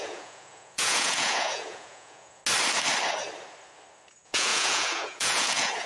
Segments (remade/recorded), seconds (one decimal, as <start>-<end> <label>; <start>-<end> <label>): 0.0-2.4 remade; 2.4-4.1 recorded; 4.1-5.9 remade